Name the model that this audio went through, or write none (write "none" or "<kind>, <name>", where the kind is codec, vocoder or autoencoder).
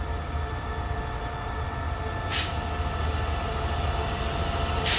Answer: none